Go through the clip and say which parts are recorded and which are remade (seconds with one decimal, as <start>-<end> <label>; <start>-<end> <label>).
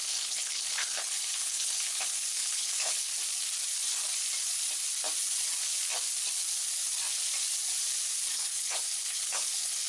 0.0-3.1 remade; 3.1-8.3 recorded; 8.3-9.9 remade